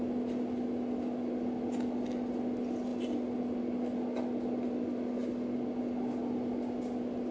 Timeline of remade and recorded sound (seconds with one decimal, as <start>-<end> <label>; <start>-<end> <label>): 0.0-7.3 recorded